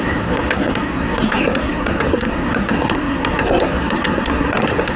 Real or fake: fake